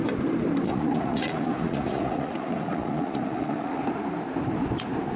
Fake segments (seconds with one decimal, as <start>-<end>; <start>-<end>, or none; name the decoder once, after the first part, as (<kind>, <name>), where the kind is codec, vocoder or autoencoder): 0.7-3.8 (vocoder, Vocos)